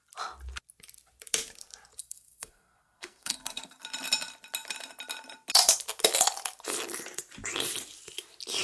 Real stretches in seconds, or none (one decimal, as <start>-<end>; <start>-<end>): 0.0-2.0; 3.8-8.6